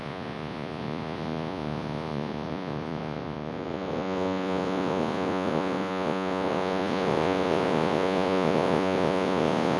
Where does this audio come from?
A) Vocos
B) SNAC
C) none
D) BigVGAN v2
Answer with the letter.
A